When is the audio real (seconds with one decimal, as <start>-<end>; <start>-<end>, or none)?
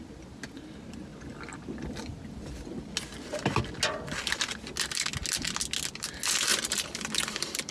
0.0-6.5